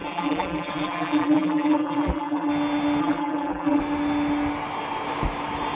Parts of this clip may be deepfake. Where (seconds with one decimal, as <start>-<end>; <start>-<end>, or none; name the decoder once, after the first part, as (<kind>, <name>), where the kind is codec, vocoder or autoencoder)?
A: 0.0-2.5 (vocoder, BigVGAN v2); 3.0-3.8